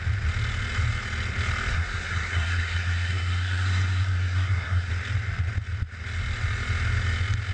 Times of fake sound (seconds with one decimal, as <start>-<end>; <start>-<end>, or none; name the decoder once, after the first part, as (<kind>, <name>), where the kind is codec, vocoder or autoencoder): 1.7-4.9 (codec, SNAC)